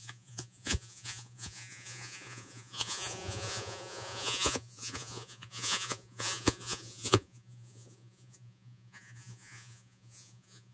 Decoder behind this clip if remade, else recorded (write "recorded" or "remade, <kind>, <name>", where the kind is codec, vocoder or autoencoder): remade, vocoder, Vocos